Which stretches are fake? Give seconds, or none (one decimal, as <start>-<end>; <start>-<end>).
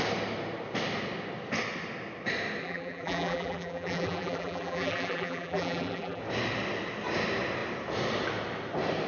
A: 2.6-6.2